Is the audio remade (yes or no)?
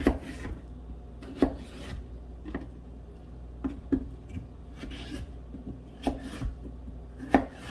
no